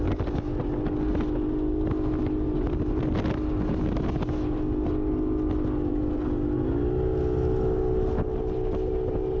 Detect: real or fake real